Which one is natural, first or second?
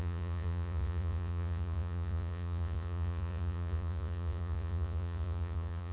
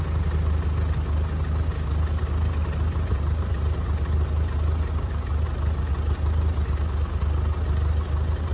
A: second